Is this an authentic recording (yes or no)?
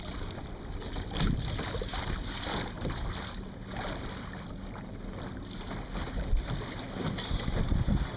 yes